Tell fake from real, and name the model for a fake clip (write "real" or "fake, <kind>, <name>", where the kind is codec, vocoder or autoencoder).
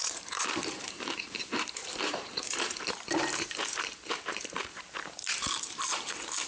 fake, vocoder, BigVGAN v2